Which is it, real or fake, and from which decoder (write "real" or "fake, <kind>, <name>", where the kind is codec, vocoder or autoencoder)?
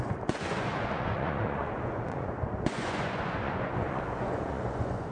fake, vocoder, Vocos